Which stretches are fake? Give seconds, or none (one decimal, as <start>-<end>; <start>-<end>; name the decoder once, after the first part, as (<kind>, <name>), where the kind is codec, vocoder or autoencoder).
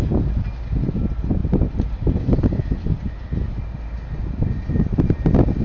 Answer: none